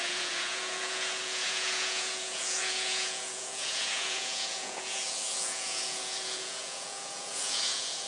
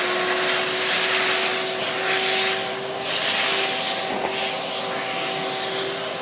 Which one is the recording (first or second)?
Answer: second